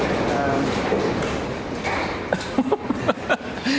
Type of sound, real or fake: real